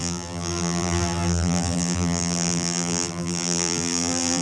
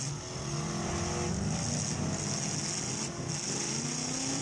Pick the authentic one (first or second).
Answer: second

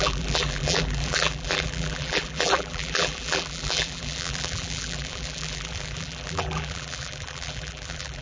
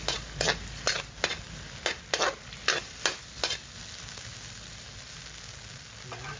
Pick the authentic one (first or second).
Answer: second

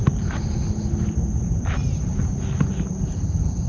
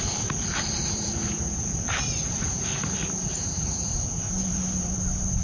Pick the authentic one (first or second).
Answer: first